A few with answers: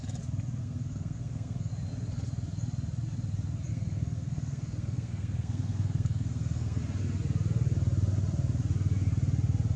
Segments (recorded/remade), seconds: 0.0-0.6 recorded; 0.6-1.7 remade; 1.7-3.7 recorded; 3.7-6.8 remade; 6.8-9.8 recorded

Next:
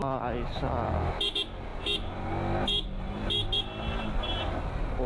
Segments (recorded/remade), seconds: 0.0-5.1 recorded